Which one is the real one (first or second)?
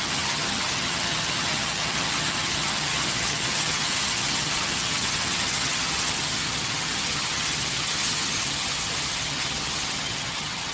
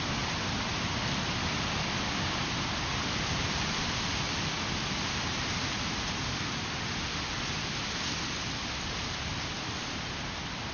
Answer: second